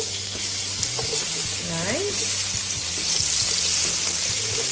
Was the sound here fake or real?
real